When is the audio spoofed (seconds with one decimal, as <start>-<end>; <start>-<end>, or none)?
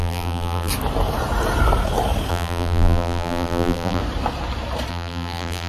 0.0-0.7; 2.3-4.0; 4.9-5.7